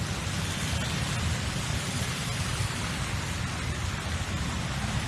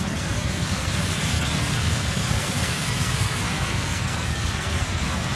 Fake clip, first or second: second